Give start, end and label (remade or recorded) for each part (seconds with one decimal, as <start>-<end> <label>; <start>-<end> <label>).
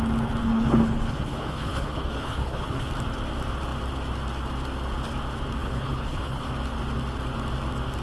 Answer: 0.0-0.4 recorded; 0.4-2.9 remade; 2.9-5.6 recorded; 5.6-6.5 remade; 6.5-8.0 recorded